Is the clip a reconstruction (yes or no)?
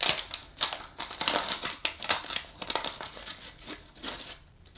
no